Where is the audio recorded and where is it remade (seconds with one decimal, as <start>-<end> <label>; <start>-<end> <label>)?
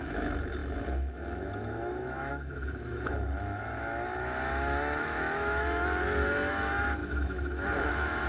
0.0-8.3 remade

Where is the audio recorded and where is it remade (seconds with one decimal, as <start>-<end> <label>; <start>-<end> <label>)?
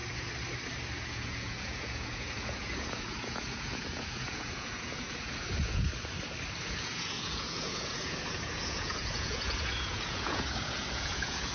0.0-1.0 recorded; 1.0-5.9 remade; 5.9-6.6 recorded; 6.6-11.5 remade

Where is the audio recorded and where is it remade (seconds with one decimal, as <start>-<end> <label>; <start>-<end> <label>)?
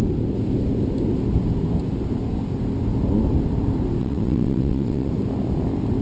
0.0-4.0 recorded; 4.0-5.1 remade; 5.1-6.0 recorded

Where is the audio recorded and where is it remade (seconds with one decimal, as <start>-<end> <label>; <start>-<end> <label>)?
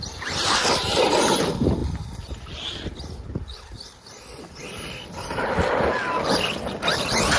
0.0-7.4 recorded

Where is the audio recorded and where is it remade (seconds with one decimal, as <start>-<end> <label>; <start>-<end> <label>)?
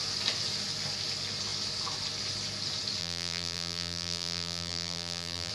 0.0-3.0 recorded; 3.0-5.5 remade